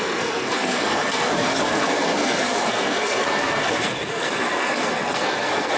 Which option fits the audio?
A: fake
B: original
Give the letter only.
A